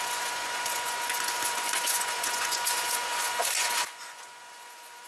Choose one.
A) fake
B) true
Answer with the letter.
A